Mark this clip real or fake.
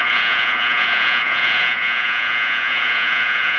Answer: fake